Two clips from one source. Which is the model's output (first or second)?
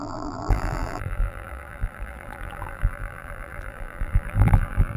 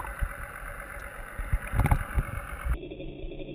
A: first